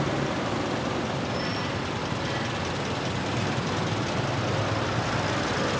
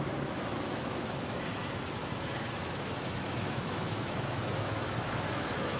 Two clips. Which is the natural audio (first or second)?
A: first